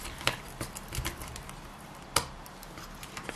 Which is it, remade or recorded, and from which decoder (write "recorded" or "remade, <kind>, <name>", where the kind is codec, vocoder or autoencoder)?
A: recorded